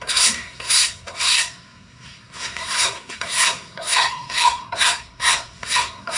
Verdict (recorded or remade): remade